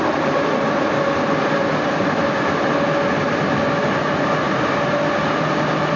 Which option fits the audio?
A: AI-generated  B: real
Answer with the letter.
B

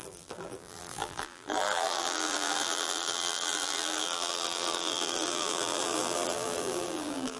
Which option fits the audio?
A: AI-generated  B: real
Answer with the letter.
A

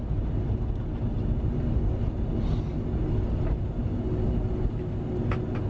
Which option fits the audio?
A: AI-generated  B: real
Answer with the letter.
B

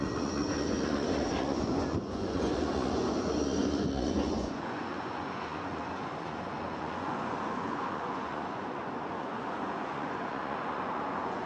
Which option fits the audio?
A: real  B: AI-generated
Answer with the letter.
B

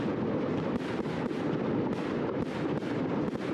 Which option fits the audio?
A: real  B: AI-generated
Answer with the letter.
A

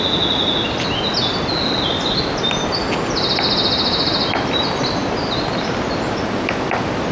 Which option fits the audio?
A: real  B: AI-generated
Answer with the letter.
A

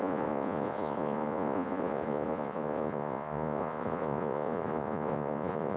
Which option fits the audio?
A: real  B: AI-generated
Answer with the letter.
B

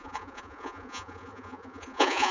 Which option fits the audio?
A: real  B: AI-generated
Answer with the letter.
B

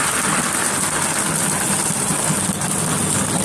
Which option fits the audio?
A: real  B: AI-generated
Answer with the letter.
A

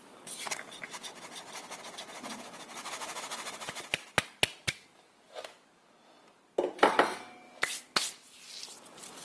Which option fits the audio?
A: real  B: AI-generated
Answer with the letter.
A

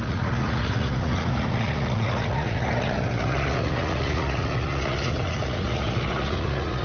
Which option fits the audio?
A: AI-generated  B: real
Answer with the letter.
A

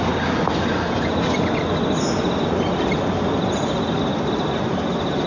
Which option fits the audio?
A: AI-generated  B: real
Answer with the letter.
B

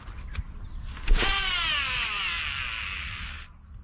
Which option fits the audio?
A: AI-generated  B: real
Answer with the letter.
B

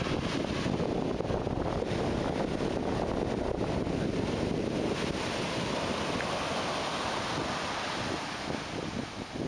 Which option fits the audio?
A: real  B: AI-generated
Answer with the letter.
A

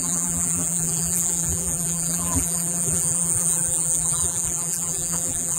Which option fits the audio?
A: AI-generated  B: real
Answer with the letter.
A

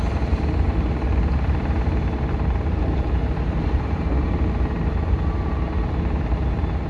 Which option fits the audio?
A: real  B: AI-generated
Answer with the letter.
B